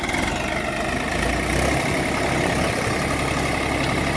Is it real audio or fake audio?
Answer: real